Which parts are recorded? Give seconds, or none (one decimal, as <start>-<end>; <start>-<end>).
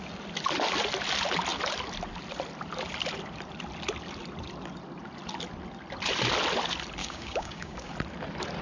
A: 0.0-7.0; 7.9-8.6